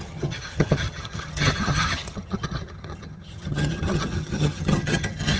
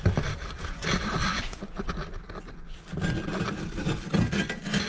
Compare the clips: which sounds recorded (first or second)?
second